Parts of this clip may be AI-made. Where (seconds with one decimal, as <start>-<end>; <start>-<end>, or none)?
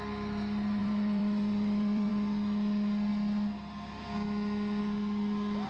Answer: 0.8-2.1